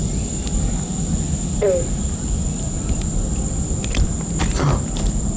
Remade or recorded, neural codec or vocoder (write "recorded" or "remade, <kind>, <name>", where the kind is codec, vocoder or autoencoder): recorded